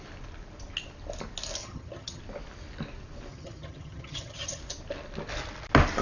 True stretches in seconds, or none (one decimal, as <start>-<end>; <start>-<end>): 0.0-1.6; 2.2-3.3; 4.6-6.0